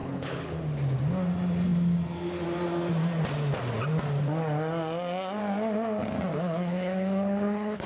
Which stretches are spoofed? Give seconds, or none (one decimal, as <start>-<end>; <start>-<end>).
0.0-0.6; 6.3-7.9